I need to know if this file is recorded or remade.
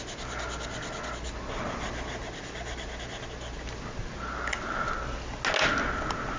recorded